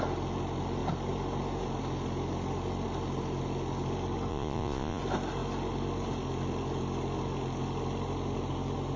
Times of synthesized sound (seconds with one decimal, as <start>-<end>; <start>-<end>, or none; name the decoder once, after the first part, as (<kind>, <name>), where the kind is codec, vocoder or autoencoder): 4.3-5.0 (vocoder, Vocos)